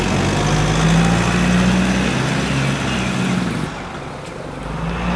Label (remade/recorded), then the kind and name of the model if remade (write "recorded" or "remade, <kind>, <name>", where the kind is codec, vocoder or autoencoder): recorded